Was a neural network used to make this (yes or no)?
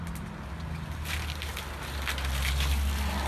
no